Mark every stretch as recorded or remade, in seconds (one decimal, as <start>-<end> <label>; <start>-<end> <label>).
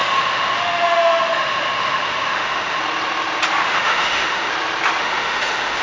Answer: 0.0-2.8 remade; 2.8-3.6 recorded; 3.6-4.5 remade; 4.5-5.0 recorded; 5.0-5.8 remade